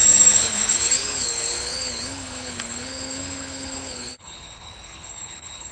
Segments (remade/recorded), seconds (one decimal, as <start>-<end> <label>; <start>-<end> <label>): 0.0-5.7 remade